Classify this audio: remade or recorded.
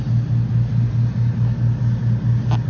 recorded